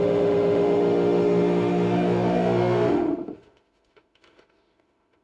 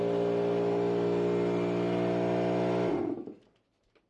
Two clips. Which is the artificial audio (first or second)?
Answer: first